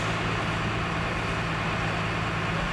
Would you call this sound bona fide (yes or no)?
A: yes